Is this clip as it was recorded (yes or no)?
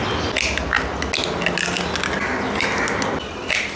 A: yes